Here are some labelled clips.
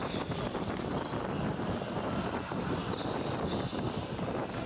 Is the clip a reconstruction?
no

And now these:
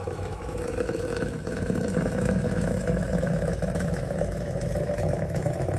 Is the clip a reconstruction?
yes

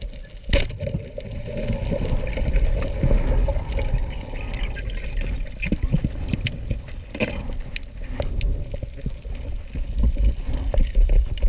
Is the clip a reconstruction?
no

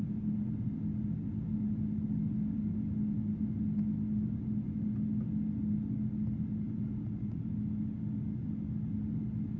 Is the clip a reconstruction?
no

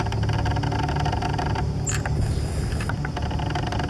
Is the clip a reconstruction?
no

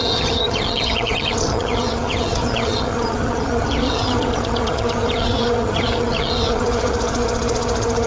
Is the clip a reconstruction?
yes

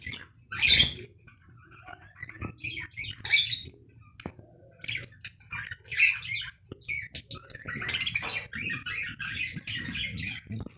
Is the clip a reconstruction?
no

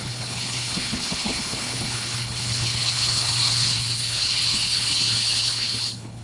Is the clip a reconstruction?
yes